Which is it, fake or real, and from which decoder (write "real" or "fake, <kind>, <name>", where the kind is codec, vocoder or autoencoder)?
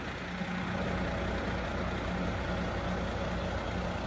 real